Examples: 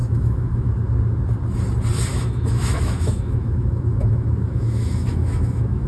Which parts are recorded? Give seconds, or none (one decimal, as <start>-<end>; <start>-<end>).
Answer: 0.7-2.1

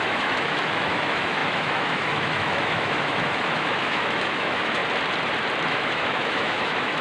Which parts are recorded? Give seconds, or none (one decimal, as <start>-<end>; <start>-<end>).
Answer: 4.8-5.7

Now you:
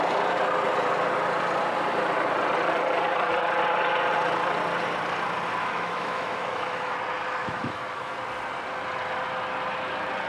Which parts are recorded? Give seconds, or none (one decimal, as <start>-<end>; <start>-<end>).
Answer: 0.0-5.6; 6.9-7.4; 8.1-10.3